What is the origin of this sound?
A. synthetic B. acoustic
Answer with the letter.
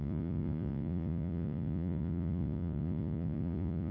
A